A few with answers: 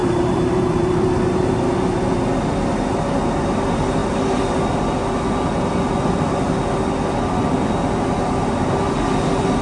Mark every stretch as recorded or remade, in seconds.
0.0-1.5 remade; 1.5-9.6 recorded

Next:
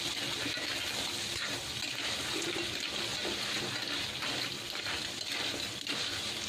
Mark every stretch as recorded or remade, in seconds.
0.0-3.1 recorded; 3.1-3.7 remade; 3.7-6.5 recorded

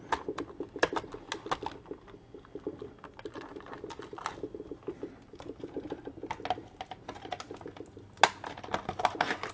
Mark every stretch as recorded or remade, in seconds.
0.0-4.9 recorded; 4.9-6.1 remade; 6.1-9.5 recorded